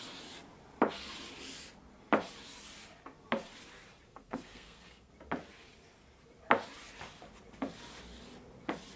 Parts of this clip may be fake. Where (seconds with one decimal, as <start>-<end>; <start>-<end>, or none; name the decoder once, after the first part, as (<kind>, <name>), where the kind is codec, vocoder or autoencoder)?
4.1-5.1 (codec, SNAC)